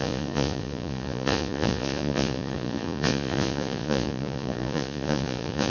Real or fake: fake